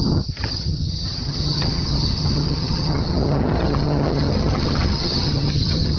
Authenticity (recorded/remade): remade